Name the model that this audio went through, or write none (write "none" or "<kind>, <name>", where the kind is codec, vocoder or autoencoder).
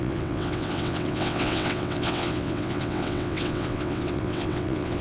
vocoder, WaveNeXt